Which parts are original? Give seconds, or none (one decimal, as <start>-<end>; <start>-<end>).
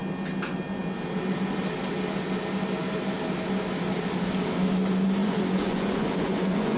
0.0-5.2